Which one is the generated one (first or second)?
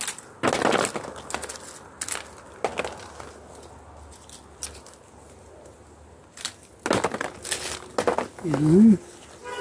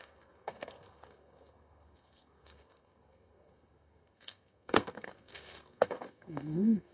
second